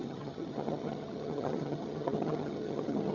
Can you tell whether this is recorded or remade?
remade